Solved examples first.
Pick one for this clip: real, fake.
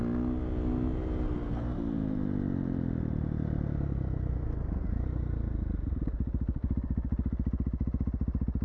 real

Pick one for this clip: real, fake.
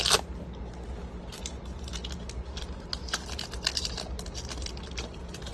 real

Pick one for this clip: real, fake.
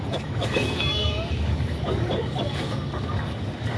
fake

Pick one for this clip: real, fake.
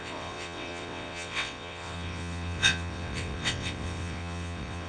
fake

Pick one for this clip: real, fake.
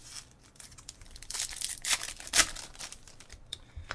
fake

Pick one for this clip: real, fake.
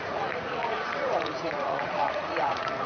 fake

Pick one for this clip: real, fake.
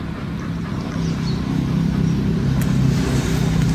real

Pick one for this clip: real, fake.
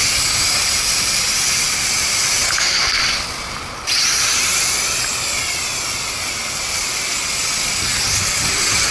real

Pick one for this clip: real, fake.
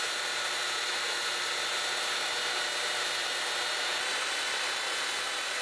real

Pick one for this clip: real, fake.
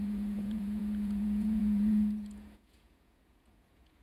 fake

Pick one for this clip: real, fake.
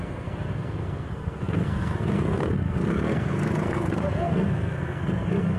fake